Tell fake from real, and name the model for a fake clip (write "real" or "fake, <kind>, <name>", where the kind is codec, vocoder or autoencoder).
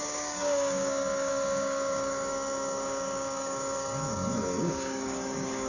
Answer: fake, codec, DAC